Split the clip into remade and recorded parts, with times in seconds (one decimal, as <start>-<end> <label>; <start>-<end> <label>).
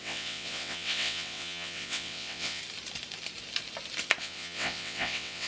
0.0-2.6 remade; 2.6-4.2 recorded; 4.2-5.5 remade